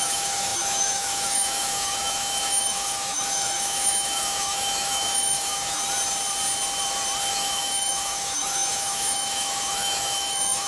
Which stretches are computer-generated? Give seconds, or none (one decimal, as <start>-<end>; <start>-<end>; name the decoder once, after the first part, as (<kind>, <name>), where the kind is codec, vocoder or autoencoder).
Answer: 0.0-5.8 (autoencoder, DAC-VAE); 7.3-10.7